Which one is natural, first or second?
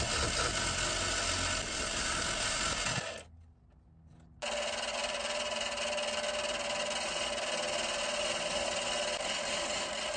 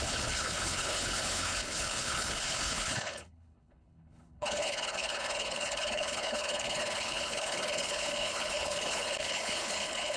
first